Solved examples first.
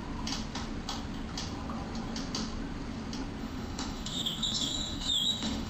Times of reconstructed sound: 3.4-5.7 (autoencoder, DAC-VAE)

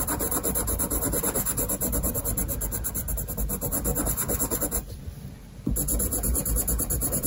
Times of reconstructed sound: none

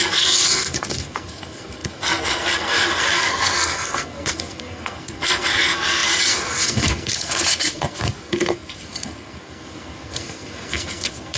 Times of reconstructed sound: 0.0-11.4 (codec, SNAC)

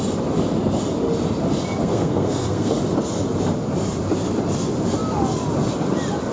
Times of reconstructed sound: 1.8-2.7 (codec, SNAC)

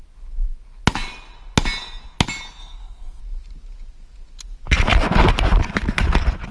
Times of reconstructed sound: 2.6-3.2 (codec, SNAC)

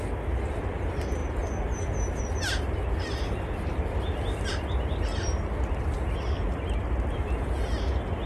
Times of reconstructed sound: none

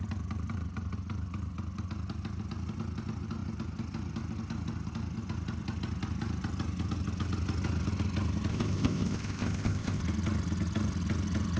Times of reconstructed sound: 8.5-10.0 (codec, ZipCodec)

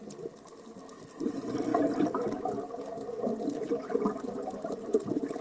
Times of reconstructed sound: none